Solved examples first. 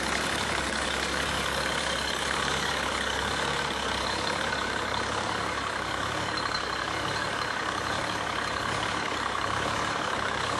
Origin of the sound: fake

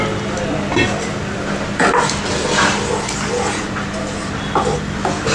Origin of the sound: real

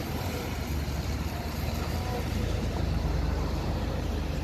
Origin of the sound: fake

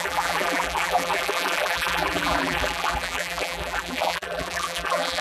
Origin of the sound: fake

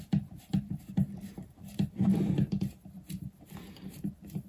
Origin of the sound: fake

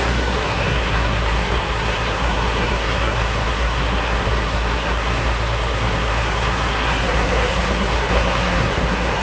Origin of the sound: fake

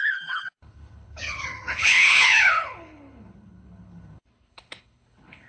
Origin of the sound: fake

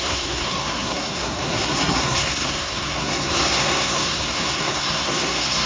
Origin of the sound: fake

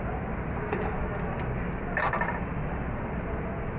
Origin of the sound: real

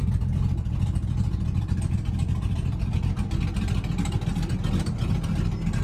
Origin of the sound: real